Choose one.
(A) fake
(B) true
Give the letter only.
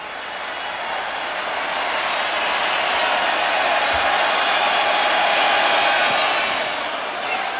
B